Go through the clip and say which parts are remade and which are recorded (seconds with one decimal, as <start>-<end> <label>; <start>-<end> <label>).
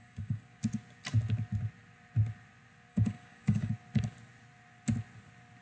0.0-0.6 remade; 0.6-2.9 recorded; 2.9-3.7 remade; 3.7-5.6 recorded